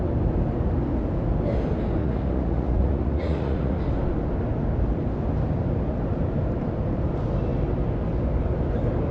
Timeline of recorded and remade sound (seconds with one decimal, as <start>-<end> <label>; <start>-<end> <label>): 0.0-2.0 recorded; 2.0-3.8 remade; 3.8-9.1 recorded